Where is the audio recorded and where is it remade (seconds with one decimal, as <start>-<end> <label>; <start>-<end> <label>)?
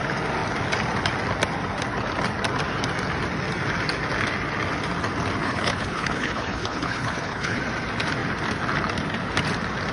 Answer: 0.0-5.4 recorded; 5.4-7.6 remade; 7.6-9.9 recorded